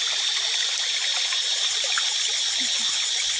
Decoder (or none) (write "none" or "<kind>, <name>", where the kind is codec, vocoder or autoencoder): none